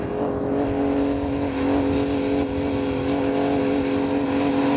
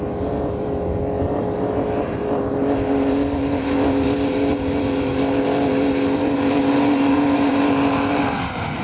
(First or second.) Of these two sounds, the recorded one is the first